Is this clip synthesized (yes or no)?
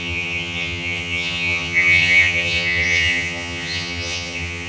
yes